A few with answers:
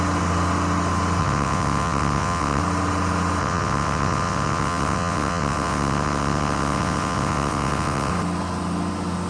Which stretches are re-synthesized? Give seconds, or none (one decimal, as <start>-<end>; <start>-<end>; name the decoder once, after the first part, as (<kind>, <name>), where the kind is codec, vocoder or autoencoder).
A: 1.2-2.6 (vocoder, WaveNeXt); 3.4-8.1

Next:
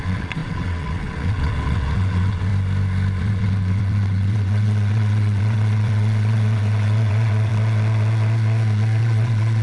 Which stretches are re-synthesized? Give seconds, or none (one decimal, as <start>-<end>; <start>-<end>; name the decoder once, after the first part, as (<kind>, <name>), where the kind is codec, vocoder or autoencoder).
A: 0.0-2.5 (vocoder, WaveNeXt); 3.2-7.5; 9.0-9.6

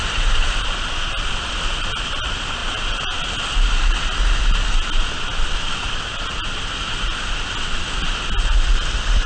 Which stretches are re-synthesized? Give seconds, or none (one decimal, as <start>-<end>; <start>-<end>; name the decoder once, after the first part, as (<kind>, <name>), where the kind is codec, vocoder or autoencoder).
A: none

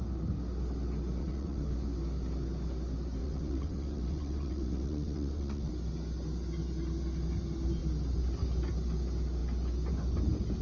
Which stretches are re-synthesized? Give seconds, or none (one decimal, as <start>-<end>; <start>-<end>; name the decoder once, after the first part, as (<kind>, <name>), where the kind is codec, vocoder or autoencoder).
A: 1.2-1.7 (vocoder, WaveNeXt); 3.2-5.7

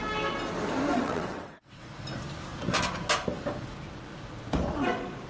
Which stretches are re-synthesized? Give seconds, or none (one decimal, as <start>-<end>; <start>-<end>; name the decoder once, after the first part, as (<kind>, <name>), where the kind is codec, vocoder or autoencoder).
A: 0.9-1.9 (vocoder, WaveNeXt)

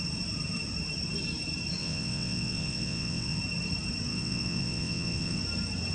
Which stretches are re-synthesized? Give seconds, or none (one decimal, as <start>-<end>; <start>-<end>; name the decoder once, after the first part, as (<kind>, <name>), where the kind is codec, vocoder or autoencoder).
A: 1.8-3.4 (vocoder, WaveNeXt); 4.1-5.4

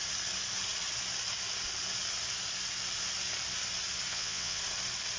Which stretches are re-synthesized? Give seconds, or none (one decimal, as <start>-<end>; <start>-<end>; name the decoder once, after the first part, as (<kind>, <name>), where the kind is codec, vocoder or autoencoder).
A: 4.1-4.6 (vocoder, WaveNeXt)

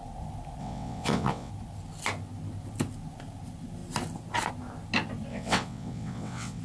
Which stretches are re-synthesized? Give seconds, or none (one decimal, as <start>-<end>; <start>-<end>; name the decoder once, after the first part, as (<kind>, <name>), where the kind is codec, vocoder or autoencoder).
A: 0.6-1.5 (vocoder, WaveNeXt); 5.3-6.6